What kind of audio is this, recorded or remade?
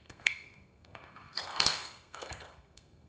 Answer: remade